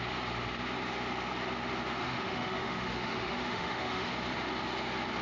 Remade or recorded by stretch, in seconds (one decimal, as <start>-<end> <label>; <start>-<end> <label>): 0.0-2.0 recorded; 2.0-4.1 remade; 4.1-5.2 recorded